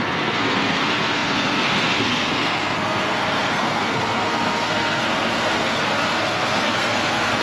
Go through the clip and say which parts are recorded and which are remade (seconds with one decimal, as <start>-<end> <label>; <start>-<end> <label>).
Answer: 0.0-7.4 remade